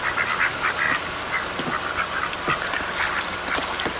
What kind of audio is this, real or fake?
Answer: real